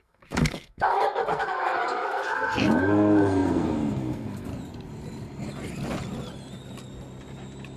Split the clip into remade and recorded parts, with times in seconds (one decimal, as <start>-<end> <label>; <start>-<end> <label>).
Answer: 0.0-4.5 remade; 4.5-7.8 recorded